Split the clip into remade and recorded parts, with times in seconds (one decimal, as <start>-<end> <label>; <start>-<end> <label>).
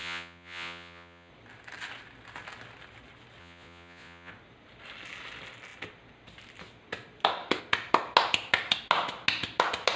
0.0-1.3 remade; 1.3-3.4 recorded; 3.4-4.3 remade; 4.3-10.0 recorded